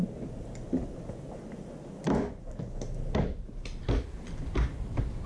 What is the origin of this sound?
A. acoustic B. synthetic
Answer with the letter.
A